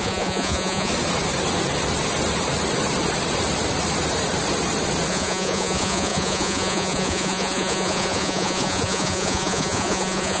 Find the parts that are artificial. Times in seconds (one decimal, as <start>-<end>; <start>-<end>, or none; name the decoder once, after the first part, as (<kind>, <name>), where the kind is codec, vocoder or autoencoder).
0.0-0.9 (vocoder, Vocos); 5.1-10.4